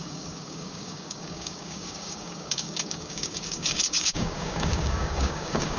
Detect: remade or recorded remade